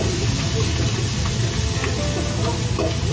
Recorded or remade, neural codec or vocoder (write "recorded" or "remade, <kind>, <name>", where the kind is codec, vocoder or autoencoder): recorded